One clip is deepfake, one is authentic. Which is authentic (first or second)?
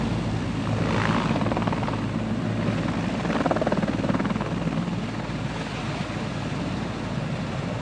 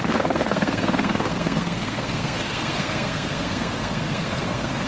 first